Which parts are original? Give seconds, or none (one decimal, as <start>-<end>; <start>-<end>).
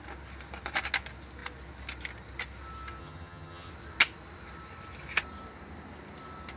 0.0-3.0; 3.7-6.6